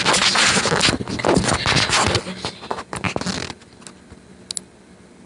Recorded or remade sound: recorded